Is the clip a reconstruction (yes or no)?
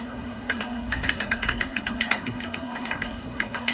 yes